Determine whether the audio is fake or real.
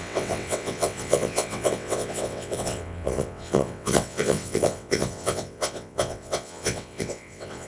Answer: fake